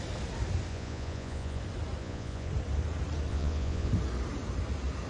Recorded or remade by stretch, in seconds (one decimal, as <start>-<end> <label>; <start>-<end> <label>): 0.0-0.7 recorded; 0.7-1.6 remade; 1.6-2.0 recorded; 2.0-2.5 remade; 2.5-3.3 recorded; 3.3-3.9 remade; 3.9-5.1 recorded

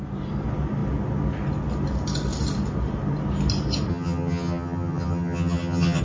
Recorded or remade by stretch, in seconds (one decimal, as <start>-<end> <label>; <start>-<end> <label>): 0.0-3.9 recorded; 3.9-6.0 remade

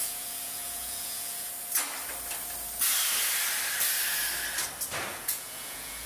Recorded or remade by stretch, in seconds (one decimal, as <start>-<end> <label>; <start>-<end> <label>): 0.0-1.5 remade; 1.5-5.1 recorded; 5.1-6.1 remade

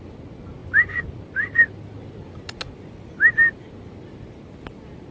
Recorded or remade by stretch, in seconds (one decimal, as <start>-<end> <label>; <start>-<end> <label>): 0.0-5.1 recorded

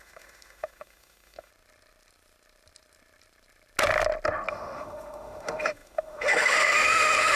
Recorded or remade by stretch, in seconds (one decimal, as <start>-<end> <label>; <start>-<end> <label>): 0.0-1.5 remade; 1.5-4.5 recorded; 4.5-7.4 remade